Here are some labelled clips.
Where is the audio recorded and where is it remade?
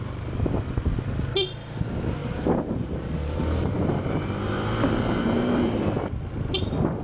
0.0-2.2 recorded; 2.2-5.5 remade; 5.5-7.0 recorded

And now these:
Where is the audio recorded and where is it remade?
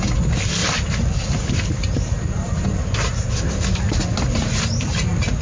0.0-0.6 recorded; 0.6-3.8 remade; 3.8-5.4 recorded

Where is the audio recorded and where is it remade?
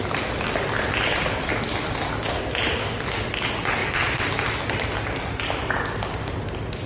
0.0-3.8 recorded; 3.8-4.3 remade; 4.3-6.9 recorded